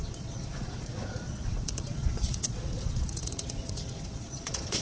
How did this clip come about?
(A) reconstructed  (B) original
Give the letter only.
A